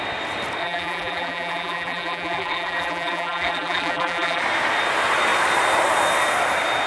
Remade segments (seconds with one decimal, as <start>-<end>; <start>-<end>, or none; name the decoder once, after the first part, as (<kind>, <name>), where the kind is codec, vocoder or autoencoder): 0.6-4.4 (vocoder, BigVGAN v2)